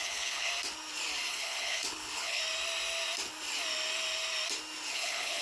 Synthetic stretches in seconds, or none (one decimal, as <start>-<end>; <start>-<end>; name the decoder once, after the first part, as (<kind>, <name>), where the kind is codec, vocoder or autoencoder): 0.0-0.5 (codec, HILCodec); 1.3-2.4; 4.9-5.4

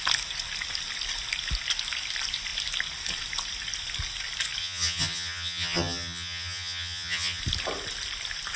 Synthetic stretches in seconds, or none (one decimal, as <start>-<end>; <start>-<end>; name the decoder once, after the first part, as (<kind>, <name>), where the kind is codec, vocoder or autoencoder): 4.6-7.4 (vocoder, HiFi-GAN)